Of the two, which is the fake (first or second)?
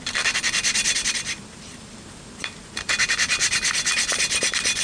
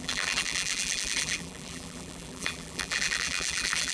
second